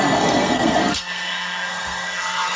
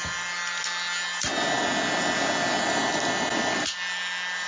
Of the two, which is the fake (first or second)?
first